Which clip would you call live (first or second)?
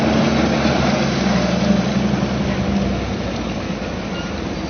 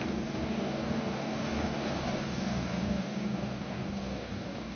first